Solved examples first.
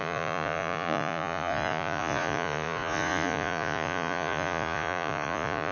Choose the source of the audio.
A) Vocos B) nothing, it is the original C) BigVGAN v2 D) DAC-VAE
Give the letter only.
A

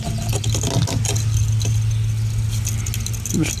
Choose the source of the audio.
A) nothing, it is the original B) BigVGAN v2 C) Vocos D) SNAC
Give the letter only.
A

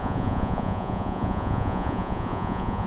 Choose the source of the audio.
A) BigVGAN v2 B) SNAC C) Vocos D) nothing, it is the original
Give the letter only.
C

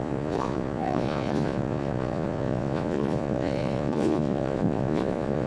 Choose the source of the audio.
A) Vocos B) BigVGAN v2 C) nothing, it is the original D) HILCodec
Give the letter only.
A